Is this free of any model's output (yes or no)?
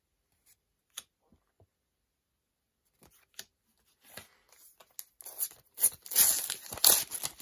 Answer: yes